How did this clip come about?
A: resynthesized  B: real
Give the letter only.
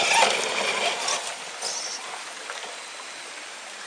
B